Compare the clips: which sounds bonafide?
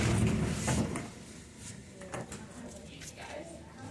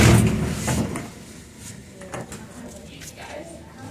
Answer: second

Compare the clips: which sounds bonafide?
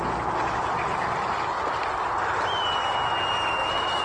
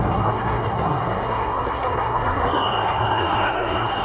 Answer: first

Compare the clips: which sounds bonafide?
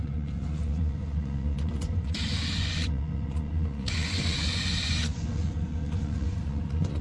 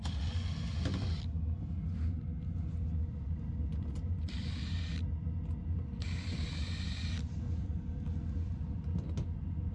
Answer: second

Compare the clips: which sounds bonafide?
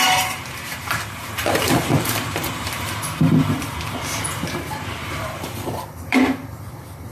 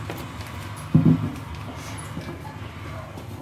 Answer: second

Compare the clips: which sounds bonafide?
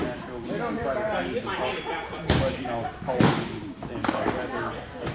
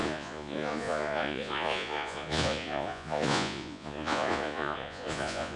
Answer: first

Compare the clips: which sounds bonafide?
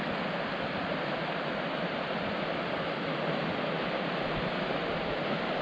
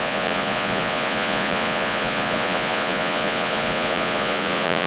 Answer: first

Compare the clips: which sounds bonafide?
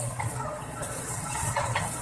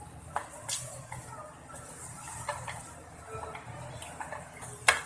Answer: second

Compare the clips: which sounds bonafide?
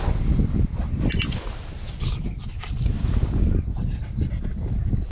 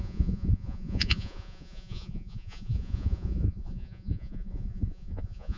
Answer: first